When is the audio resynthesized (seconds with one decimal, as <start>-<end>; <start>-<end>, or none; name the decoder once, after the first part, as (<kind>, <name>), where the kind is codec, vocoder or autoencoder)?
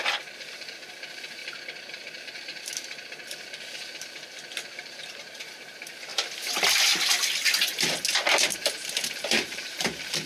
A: 0.0-1.4 (vocoder, BigVGAN v2); 1.9-2.5; 4.8-6.1; 8.7-10.3